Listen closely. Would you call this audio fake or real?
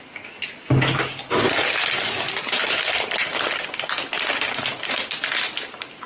real